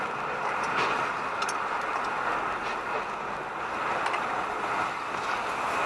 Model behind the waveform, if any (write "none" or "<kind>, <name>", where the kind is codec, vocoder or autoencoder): none